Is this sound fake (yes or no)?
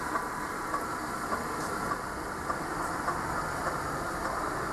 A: no